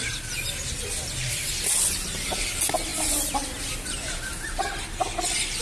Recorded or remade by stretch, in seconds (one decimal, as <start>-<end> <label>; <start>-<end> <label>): 0.0-5.6 recorded